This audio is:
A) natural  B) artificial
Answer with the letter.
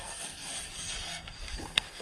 B